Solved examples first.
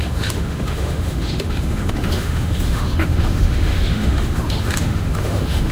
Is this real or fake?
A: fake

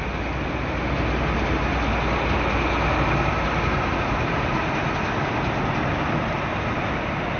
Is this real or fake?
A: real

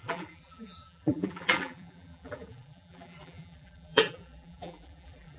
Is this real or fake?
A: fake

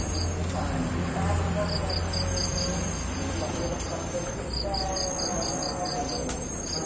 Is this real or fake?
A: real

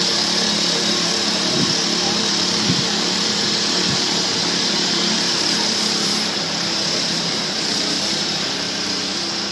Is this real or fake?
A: fake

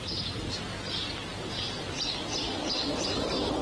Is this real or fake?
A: real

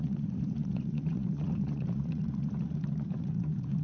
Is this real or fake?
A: fake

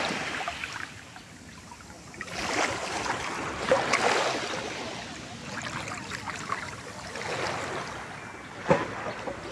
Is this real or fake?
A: real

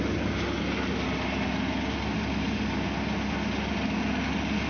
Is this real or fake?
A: real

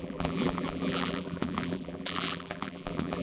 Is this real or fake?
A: fake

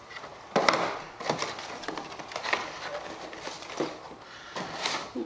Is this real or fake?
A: fake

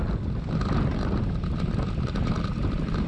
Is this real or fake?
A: real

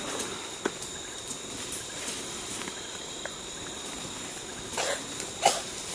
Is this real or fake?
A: real